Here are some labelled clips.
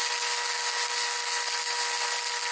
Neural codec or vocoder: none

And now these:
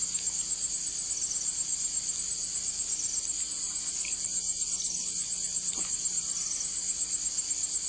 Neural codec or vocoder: none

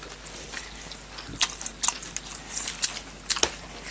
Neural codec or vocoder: none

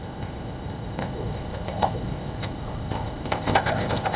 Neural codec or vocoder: codec, ZipCodec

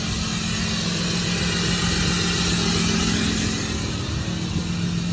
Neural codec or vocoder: none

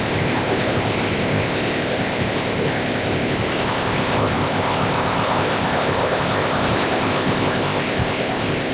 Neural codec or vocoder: codec, ZipCodec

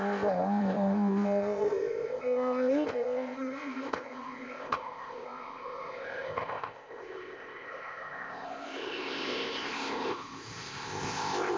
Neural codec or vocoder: codec, ZipCodec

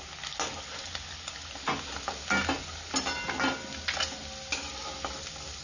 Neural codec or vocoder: none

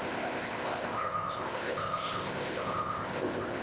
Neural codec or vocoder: codec, ZipCodec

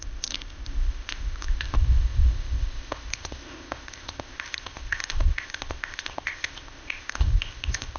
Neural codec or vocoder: codec, ZipCodec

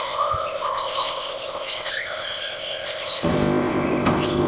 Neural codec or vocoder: codec, ZipCodec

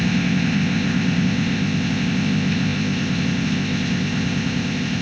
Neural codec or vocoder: codec, ZipCodec